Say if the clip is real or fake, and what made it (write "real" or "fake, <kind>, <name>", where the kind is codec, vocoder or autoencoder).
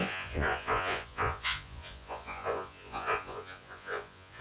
fake, vocoder, Vocos